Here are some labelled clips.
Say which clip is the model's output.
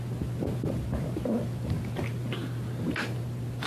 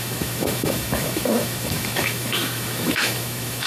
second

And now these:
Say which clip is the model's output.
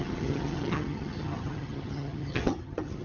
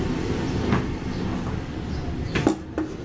first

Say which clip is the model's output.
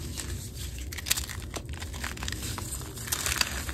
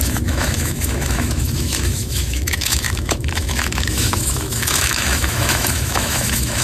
second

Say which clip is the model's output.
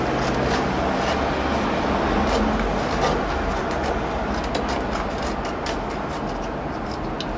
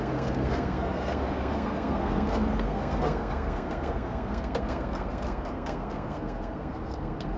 second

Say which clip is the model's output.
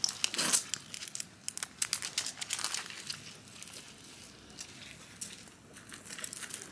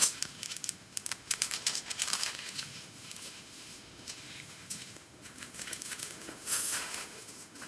second